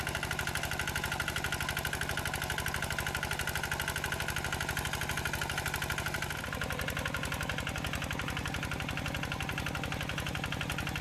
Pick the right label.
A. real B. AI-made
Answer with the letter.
A